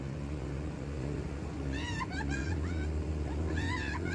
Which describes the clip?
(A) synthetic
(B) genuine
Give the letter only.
A